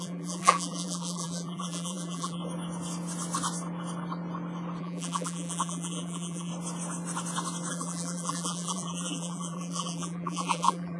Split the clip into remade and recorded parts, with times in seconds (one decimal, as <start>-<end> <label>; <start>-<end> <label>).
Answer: 0.0-2.4 remade; 2.4-4.8 recorded; 4.8-6.5 remade; 6.5-7.7 recorded; 7.7-11.0 remade